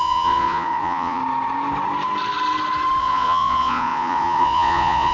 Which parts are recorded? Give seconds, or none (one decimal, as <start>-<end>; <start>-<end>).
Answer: 1.2-3.0